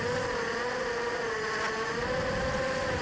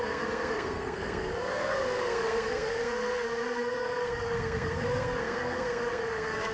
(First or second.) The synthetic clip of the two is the second